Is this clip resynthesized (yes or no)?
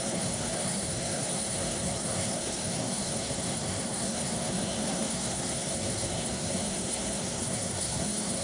yes